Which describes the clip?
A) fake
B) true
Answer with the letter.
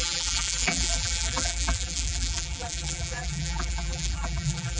A